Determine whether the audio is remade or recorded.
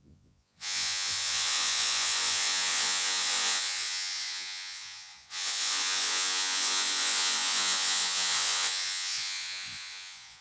remade